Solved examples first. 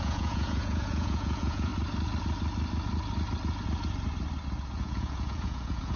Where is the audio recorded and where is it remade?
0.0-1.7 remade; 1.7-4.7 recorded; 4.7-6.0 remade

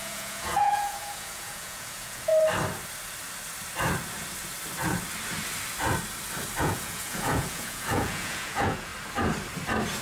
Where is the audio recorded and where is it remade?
0.0-2.3 remade; 2.3-6.6 recorded; 6.6-8.9 remade; 8.9-10.0 recorded

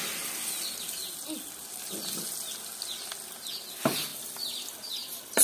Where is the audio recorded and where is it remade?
0.0-5.4 recorded

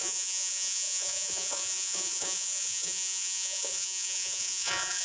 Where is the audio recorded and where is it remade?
0.0-5.0 remade

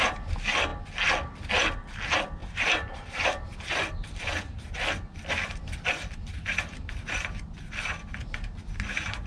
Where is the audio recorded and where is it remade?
0.0-2.4 recorded; 2.4-3.5 remade; 3.5-9.3 recorded